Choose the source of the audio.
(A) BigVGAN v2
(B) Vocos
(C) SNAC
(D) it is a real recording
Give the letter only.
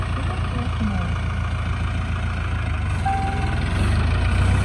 D